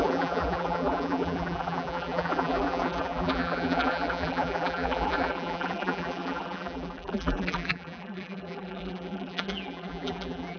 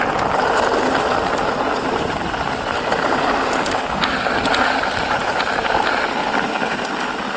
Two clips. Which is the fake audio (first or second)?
first